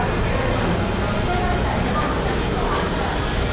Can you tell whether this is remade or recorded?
recorded